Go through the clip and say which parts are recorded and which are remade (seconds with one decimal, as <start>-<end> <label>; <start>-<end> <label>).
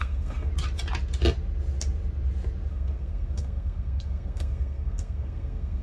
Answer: 0.0-0.5 remade; 0.5-2.7 recorded; 2.7-5.8 remade